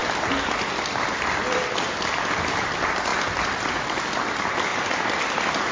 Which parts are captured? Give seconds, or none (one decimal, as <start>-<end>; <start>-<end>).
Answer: 0.0-5.7

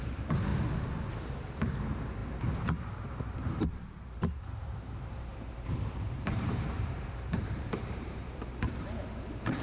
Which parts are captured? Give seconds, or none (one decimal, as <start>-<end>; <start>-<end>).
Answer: 0.5-1.1; 2.2-3.2